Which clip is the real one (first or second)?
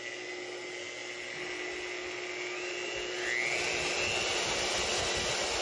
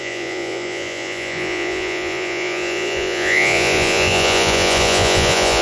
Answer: first